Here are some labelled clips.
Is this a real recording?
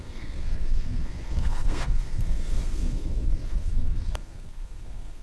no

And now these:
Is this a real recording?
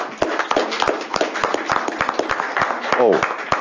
yes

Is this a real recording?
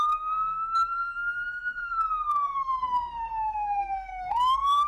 no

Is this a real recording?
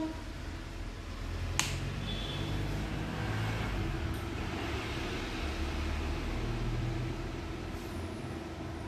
yes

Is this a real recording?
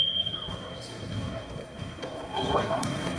no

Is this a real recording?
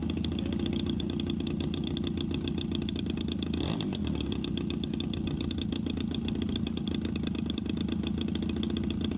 yes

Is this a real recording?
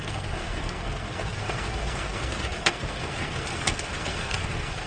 no